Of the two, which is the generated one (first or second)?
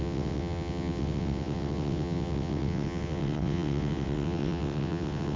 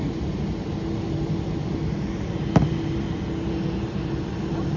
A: first